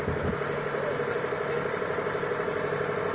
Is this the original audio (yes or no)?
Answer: yes